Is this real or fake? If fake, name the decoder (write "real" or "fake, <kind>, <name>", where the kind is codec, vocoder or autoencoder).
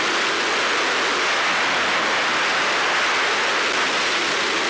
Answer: real